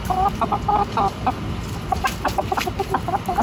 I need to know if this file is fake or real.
real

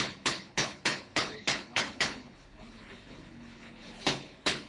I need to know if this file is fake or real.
fake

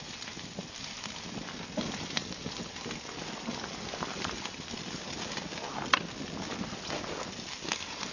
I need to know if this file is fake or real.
real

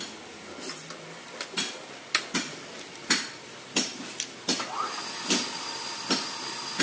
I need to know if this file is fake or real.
real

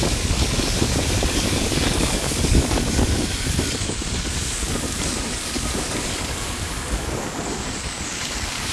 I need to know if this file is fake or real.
fake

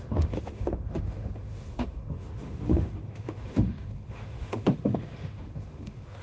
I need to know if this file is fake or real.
fake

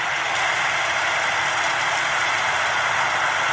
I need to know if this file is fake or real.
real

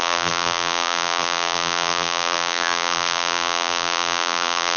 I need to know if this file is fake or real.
fake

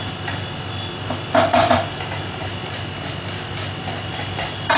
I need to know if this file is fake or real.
real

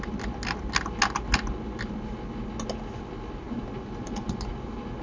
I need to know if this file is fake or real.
real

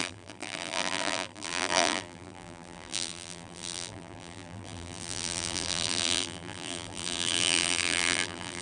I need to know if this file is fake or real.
fake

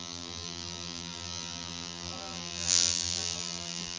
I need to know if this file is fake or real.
fake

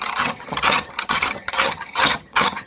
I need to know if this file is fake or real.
fake